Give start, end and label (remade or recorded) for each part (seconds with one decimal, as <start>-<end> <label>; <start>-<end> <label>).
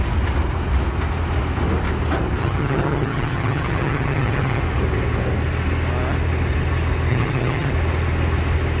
0.0-2.4 recorded; 2.4-4.6 remade; 4.6-7.1 recorded; 7.1-7.7 remade; 7.7-8.8 recorded